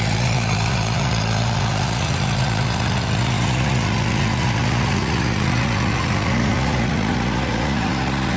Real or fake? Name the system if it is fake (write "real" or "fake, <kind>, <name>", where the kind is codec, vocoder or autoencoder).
fake, vocoder, Vocos